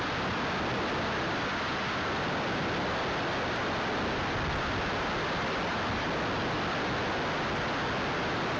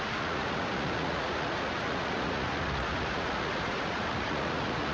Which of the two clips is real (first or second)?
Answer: first